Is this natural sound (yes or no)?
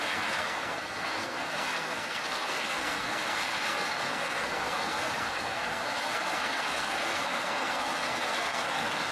no